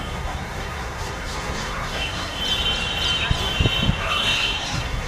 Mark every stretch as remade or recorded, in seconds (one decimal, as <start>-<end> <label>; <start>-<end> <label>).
0.0-2.4 remade; 2.4-4.0 recorded; 4.0-5.1 remade